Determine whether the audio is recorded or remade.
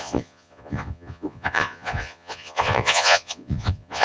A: remade